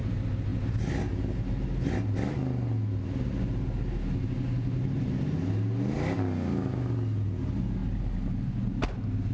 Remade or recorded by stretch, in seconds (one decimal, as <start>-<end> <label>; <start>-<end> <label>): 0.0-9.3 recorded